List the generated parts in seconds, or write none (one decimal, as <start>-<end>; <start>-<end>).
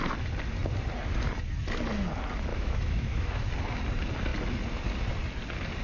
2.5-3.5